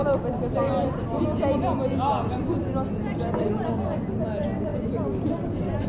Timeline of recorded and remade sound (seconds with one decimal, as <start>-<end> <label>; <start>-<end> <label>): 0.0-5.9 recorded